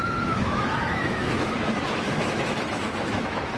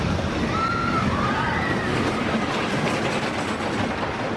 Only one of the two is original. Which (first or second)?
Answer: second